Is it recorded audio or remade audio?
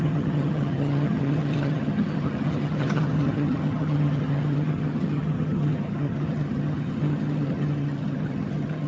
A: remade